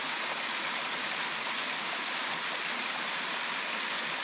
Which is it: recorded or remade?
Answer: recorded